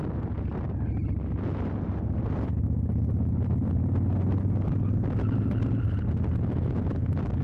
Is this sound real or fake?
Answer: real